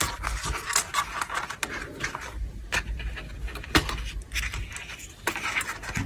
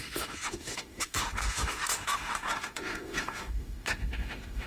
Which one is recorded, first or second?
first